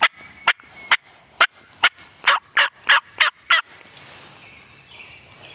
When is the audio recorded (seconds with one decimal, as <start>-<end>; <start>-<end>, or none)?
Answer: 0.0-5.5